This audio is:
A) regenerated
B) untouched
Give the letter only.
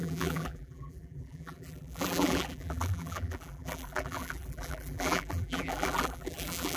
A